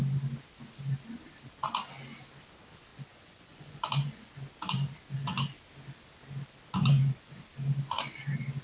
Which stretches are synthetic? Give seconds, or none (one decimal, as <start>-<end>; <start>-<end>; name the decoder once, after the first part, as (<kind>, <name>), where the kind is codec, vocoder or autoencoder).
2.9-4.3 (vocoder, Vocos); 6.8-7.4